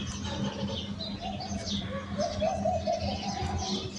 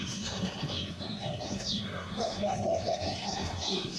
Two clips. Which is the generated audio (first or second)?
second